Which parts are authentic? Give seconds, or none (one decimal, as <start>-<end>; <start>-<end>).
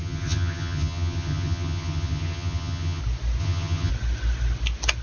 3.0-3.4; 3.9-5.0